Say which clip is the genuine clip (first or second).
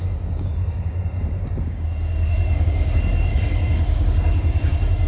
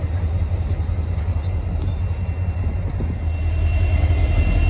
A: second